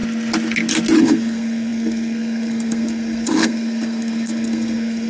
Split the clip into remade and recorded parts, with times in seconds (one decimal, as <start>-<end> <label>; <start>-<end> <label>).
0.0-1.0 recorded; 1.0-5.1 remade